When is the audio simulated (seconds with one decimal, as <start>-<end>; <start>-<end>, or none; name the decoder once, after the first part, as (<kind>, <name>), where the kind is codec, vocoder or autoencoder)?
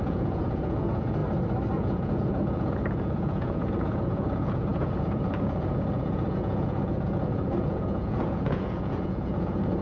0.0-1.2 (vocoder, Vocos); 1.7-9.8